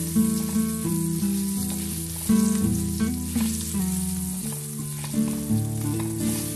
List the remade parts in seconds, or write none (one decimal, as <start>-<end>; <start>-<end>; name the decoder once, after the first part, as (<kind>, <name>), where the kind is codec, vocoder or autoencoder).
none